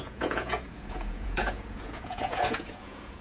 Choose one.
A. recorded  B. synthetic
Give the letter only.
B